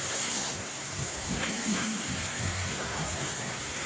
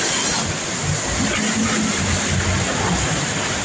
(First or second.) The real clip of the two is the second